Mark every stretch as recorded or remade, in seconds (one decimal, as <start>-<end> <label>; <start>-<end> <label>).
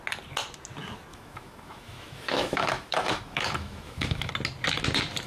0.0-1.1 recorded; 1.1-4.3 remade; 4.3-5.3 recorded